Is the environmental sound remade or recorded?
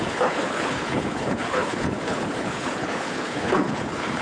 remade